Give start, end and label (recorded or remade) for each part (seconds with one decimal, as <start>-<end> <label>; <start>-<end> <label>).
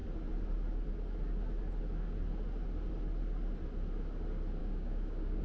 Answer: 0.0-4.6 recorded; 4.6-5.4 remade